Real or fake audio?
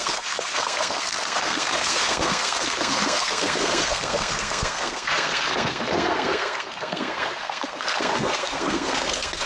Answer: fake